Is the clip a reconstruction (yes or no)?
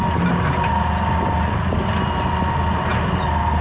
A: no